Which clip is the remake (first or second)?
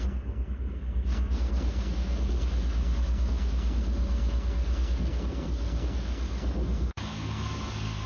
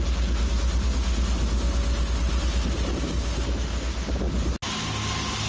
first